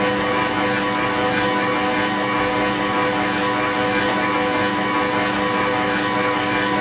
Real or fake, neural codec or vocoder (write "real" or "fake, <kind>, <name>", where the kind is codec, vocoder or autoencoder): real